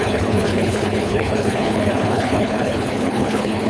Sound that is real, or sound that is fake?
fake